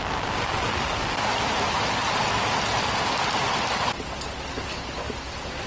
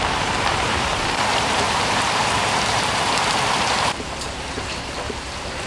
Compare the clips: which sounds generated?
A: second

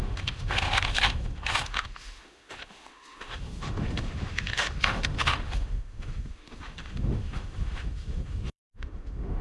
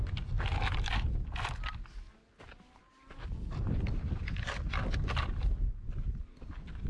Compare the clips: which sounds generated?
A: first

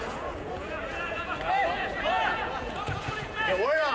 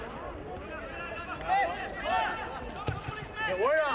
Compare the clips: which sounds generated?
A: first